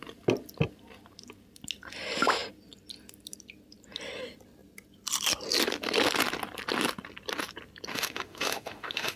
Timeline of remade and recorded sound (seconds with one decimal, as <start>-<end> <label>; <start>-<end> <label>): 0.0-7.9 recorded; 7.9-9.2 remade